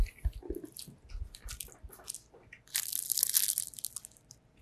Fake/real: real